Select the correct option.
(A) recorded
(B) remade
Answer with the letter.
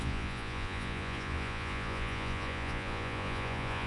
B